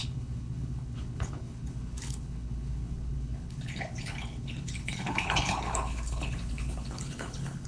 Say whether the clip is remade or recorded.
remade